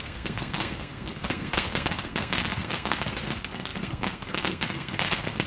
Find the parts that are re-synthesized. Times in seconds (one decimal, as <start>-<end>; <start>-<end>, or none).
0.0-5.5